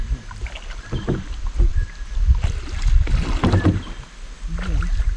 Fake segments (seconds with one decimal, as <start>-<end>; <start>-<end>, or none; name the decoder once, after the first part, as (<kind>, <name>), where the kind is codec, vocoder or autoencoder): none